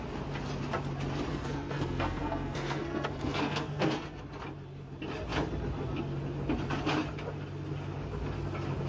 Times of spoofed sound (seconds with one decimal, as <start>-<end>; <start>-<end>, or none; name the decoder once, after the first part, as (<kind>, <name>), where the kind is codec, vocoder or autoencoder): 1.3-4.2 (codec, SNAC)

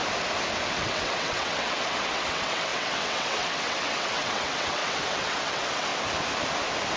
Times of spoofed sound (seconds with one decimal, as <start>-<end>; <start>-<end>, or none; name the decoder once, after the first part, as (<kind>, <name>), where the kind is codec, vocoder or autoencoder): 0.7-5.9 (vocoder, WaveNeXt)

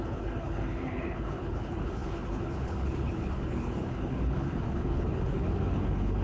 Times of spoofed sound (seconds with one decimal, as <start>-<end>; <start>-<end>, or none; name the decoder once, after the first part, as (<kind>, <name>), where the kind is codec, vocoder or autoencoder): 0.0-6.2 (codec, HILCodec)

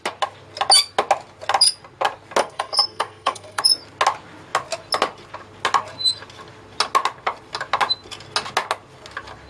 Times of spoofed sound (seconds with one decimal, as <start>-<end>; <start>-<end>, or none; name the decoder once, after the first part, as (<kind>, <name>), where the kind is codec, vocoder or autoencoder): 2.4-3.6 (codec, SNAC)

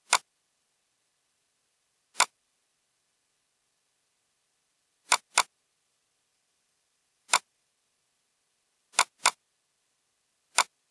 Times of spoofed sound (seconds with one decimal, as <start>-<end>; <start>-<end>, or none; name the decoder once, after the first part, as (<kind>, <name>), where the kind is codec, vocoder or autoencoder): 6.3-7.7 (vocoder, BigVGAN v2)

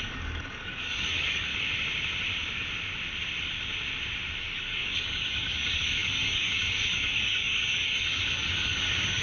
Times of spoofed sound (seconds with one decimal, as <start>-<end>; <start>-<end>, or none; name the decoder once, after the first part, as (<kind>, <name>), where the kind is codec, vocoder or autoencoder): 0.0-1.5 (codec, DAC); 4.4-9.2

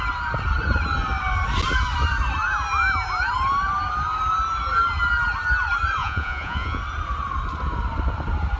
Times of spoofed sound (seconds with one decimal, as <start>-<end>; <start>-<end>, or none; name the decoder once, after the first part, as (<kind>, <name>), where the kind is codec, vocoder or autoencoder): 6.0-6.8 (vocoder, Vocos)